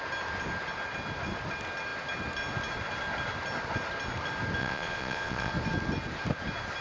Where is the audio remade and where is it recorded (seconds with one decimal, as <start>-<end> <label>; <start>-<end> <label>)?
0.0-4.6 recorded; 4.6-5.5 remade; 5.5-6.8 recorded

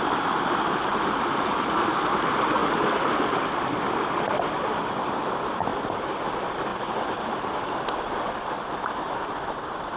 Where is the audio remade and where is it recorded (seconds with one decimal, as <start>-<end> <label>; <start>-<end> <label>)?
0.0-10.0 recorded

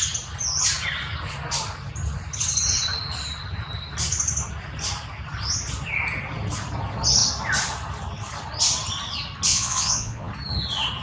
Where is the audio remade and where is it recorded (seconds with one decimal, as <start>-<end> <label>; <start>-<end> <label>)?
0.0-9.5 recorded; 9.5-10.3 remade; 10.3-11.0 recorded